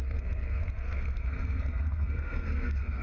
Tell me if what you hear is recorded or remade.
remade